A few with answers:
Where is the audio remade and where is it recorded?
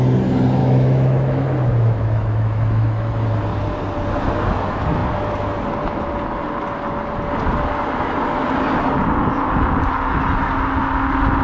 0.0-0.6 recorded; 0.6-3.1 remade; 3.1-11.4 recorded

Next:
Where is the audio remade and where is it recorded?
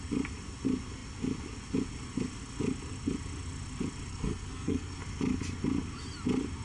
0.0-4.1 recorded; 4.1-5.0 remade; 5.0-6.6 recorded